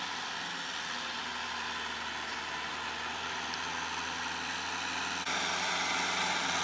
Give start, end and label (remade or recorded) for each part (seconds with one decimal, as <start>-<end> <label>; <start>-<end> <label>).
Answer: 0.0-6.6 recorded